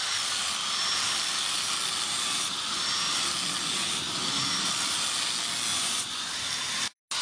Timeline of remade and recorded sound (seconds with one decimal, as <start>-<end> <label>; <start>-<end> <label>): 0.0-5.7 recorded; 5.7-6.3 remade; 6.3-7.2 recorded